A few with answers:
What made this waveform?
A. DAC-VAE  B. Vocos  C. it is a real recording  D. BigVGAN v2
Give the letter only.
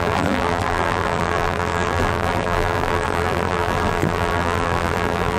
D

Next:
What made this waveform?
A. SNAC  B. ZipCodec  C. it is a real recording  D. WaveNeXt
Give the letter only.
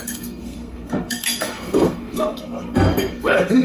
A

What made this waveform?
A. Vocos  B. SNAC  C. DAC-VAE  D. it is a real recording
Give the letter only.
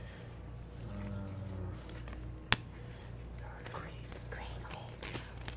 D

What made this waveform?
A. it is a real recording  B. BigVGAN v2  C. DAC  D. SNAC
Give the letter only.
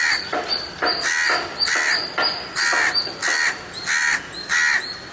A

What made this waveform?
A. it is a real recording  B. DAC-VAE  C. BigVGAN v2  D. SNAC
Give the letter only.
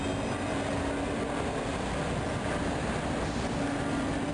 A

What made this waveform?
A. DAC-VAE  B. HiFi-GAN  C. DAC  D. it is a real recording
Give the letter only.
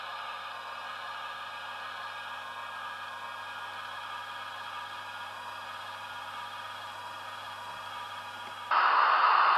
D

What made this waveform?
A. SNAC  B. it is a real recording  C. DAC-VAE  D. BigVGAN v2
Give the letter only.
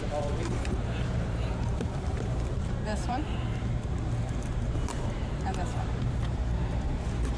D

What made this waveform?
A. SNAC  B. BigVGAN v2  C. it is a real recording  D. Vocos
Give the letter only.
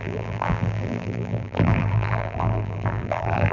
B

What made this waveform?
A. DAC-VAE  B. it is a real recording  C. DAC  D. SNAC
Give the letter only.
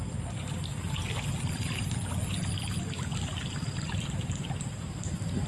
B